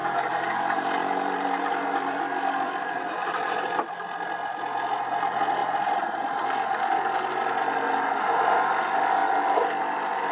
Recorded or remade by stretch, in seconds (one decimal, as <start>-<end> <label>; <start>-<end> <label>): 0.0-0.5 remade; 0.5-1.0 recorded; 1.0-3.5 remade; 3.5-5.6 recorded; 5.6-6.2 remade; 6.2-10.3 recorded